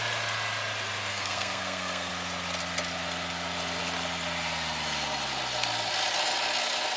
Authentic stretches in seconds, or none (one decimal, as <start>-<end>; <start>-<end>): 0.0-1.1; 2.1-7.0